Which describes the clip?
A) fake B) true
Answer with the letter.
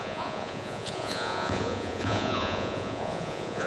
A